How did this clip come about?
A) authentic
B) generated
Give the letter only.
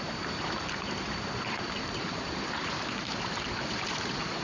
B